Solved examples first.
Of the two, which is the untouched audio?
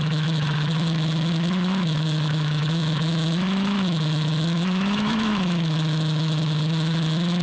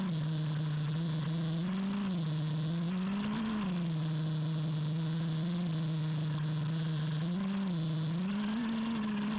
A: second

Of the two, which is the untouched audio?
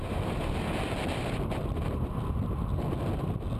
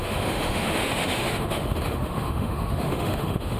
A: first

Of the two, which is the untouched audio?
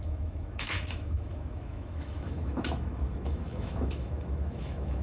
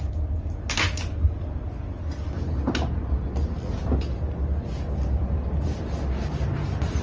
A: second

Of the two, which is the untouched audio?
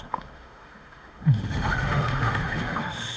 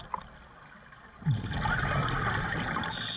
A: second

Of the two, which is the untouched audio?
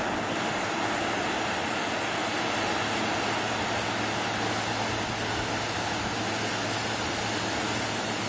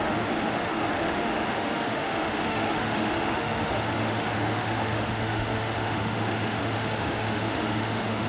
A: first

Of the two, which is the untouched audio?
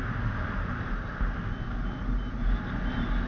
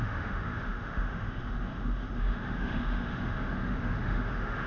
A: first